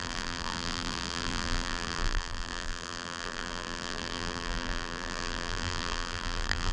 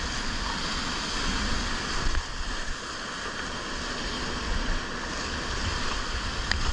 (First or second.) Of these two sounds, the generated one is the first